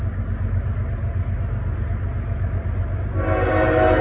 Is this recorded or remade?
recorded